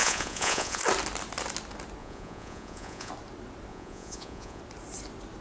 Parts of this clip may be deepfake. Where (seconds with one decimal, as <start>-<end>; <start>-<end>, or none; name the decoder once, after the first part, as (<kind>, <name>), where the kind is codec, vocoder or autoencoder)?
0.0-0.8 (vocoder, Vocos); 2.0-3.1; 3.7-4.6